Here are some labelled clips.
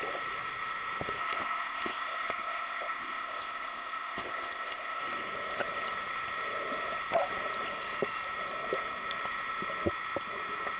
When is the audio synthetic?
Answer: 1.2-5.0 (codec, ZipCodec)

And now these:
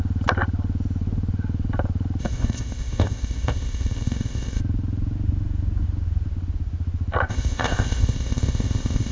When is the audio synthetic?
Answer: 2.2-4.6 (codec, ZipCodec); 7.3-9.1

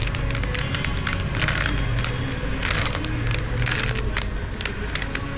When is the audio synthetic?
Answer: none

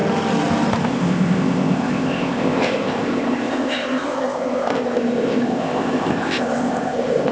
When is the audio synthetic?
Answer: 0.8-7.3 (codec, ZipCodec)

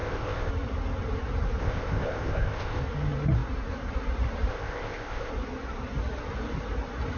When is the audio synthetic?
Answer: 0.0-0.5 (codec, ZipCodec); 1.6-2.8; 4.5-5.3

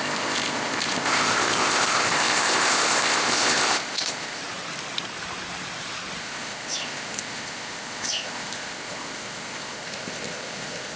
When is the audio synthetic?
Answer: 0.0-4.4 (codec, ZipCodec); 6.2-11.0

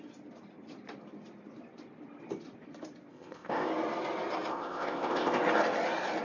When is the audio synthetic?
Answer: 3.1-3.7 (codec, ZipCodec); 4.5-5.4

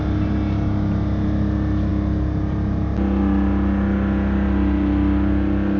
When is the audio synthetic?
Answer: none